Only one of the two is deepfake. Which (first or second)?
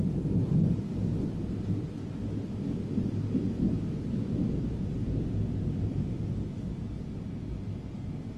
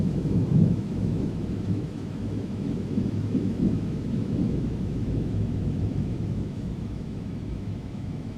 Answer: second